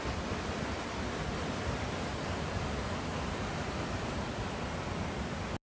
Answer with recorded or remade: recorded